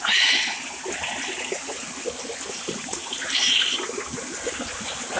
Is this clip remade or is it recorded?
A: recorded